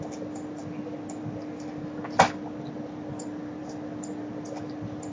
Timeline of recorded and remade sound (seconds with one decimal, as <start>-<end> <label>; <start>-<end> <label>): 0.0-5.1 recorded